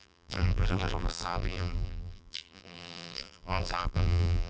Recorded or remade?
remade